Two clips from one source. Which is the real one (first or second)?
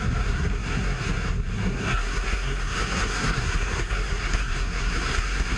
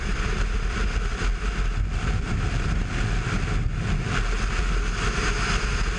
second